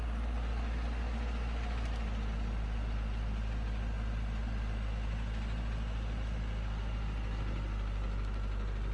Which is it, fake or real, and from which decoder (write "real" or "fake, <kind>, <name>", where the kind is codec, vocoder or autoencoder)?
real